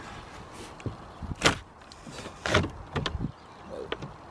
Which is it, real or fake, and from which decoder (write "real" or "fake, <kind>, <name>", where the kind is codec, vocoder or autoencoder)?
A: real